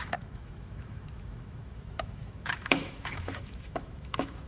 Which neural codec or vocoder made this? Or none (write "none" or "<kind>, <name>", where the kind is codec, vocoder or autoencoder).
autoencoder, DAC-VAE